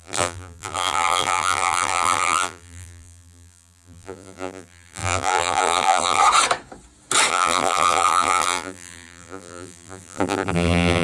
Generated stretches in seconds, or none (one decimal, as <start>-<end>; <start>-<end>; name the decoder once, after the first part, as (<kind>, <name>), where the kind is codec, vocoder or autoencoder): 0.0-6.2 (vocoder, BigVGAN v2); 7.3-11.0